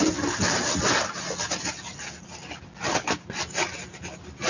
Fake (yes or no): no